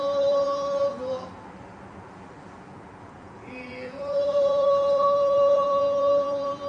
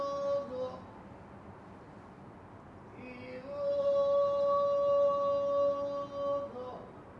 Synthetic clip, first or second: first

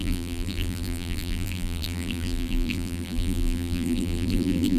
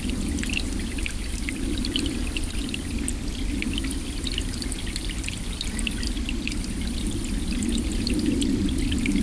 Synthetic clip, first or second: first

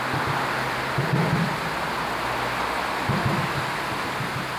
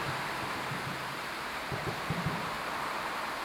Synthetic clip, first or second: second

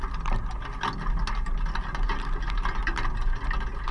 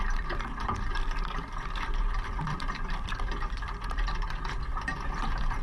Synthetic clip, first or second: second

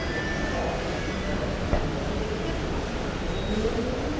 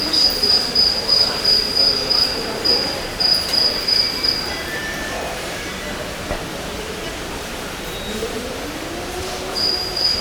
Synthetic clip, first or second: second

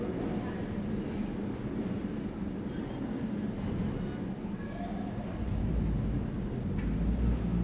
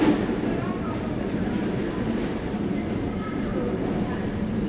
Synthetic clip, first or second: second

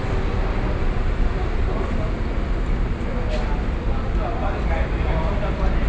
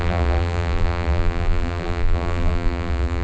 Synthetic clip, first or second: second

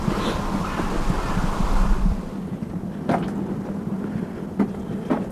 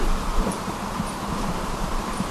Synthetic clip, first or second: second